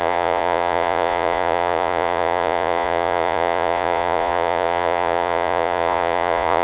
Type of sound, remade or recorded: remade